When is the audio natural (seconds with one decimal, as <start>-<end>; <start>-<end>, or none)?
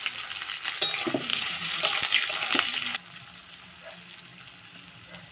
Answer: 0.0-1.3; 1.8-5.3